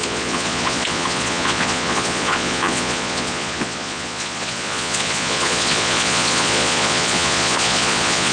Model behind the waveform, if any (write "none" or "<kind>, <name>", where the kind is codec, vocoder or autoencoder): vocoder, Vocos